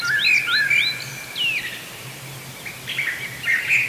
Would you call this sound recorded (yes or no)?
yes